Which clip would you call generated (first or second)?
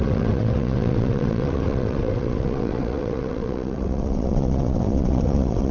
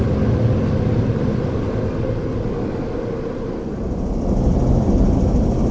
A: first